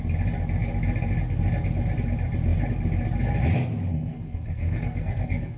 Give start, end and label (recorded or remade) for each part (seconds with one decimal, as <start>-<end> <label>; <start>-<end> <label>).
0.0-3.9 recorded; 3.9-5.6 remade